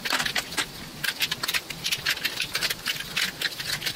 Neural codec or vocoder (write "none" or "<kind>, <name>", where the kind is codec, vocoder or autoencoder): none